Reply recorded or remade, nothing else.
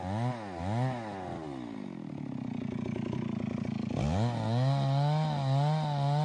recorded